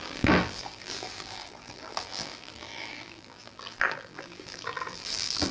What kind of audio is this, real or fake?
fake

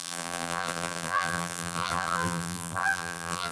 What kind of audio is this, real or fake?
fake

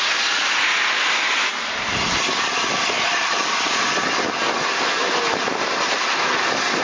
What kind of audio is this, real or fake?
real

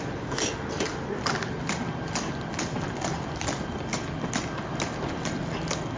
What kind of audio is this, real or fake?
real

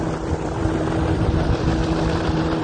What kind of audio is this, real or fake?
fake